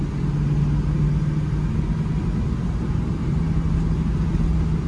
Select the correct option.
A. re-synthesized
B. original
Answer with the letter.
B